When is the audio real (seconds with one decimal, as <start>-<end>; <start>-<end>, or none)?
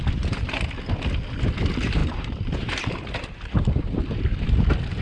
0.0-2.0; 2.8-5.0